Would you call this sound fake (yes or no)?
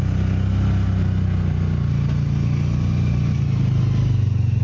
no